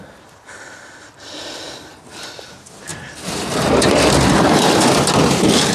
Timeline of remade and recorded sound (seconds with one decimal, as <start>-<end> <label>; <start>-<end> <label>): 0.0-5.7 recorded